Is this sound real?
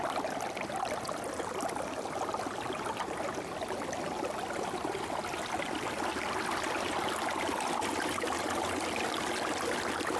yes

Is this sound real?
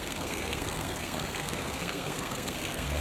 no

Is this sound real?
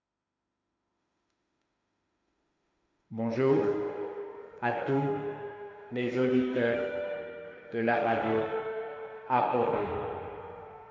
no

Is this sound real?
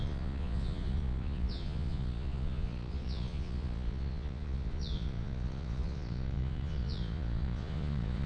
no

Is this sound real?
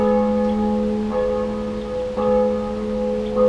yes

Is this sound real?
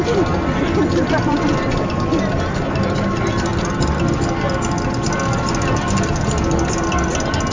yes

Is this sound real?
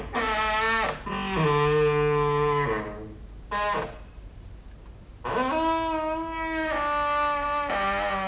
yes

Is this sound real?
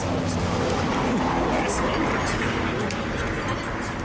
yes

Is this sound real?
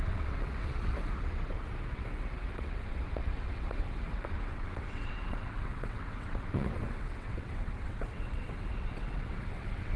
no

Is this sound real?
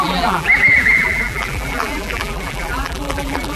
no